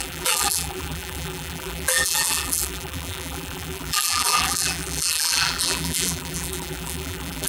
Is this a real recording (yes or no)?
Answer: no